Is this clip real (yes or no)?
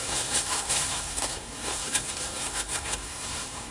no